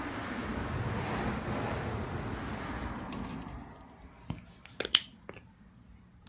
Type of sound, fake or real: real